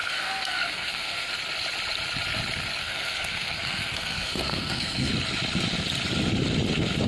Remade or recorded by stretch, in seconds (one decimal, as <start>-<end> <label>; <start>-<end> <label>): 0.0-1.3 remade; 1.3-2.8 recorded; 2.8-5.1 remade; 5.1-7.1 recorded